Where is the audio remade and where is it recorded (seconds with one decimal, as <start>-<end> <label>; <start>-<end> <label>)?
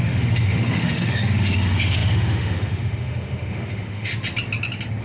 0.0-4.1 remade; 4.1-5.0 recorded